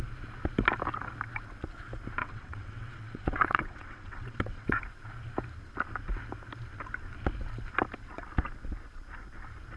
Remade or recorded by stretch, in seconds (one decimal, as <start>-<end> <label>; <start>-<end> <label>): 0.0-2.2 recorded; 2.2-4.8 remade; 4.8-9.8 recorded